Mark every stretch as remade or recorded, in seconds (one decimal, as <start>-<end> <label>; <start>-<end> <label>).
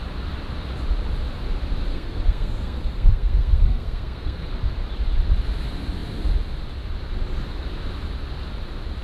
0.0-1.9 recorded; 1.9-4.5 remade; 4.5-9.0 recorded